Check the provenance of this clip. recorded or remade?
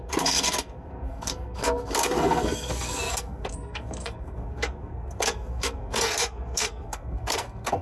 remade